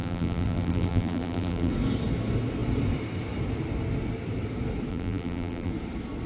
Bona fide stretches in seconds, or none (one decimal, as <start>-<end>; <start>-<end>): 1.7-4.9; 5.7-6.3